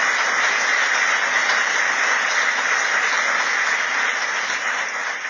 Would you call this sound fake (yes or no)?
no